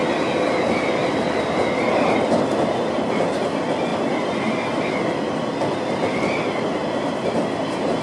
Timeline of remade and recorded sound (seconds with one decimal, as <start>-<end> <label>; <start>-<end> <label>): 0.0-8.0 recorded